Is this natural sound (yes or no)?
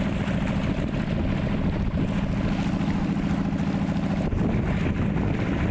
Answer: yes